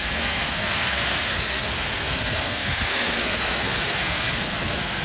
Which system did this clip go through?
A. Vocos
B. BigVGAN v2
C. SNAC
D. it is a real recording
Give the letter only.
C